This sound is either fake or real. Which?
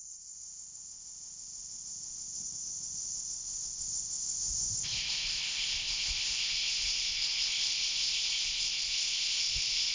fake